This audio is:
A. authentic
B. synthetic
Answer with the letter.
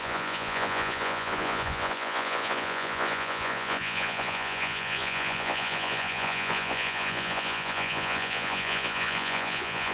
B